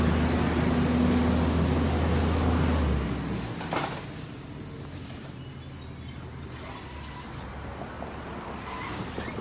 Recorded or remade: recorded